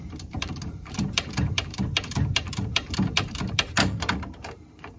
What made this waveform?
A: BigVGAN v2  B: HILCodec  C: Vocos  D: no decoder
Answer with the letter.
A